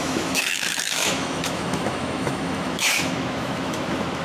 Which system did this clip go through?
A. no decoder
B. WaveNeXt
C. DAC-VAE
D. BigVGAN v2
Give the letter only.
C